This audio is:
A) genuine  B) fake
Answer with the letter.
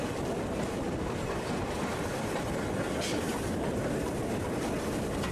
A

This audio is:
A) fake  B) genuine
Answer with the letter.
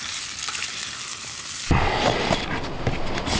B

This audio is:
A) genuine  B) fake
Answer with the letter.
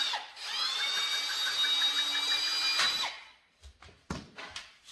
A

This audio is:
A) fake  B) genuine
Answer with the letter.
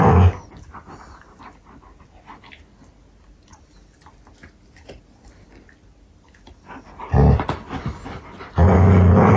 B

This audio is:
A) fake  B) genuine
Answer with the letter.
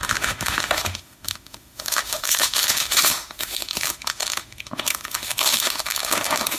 A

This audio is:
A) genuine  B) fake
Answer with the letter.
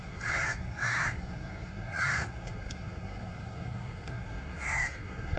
B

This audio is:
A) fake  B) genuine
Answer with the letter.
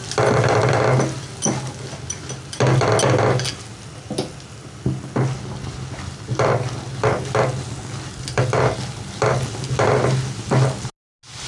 B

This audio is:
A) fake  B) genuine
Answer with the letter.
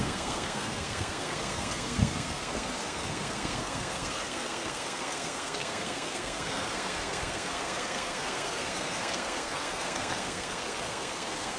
A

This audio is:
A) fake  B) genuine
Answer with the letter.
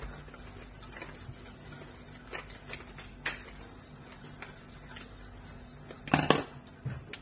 B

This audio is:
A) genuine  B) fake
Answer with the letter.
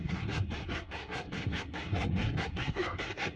B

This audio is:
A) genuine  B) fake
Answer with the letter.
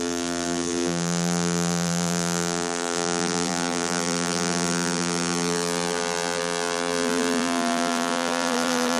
B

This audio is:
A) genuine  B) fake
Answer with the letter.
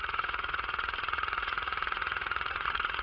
B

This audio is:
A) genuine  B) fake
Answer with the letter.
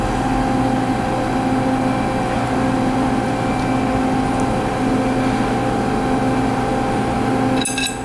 A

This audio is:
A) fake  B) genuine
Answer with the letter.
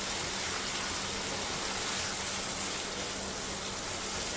B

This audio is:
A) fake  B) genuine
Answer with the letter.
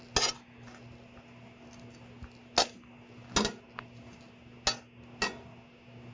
B